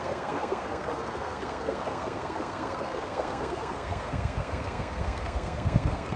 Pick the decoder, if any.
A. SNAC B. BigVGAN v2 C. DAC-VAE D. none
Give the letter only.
A